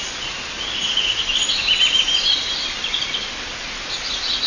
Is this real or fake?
real